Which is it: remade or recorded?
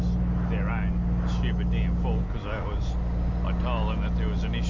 recorded